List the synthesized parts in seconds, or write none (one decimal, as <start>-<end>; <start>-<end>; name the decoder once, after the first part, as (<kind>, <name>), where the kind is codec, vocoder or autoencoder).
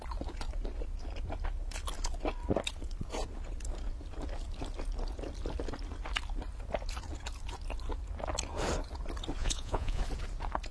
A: 9.4-10.0 (vocoder, Vocos)